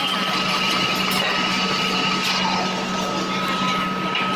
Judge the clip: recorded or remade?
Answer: recorded